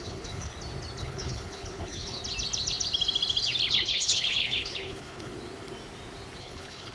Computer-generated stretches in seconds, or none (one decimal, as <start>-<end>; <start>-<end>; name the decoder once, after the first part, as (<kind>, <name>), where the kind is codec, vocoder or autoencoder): 0.0-0.5 (codec, HILCodec); 1.0-2.2; 3.7-5.3; 6.4-6.9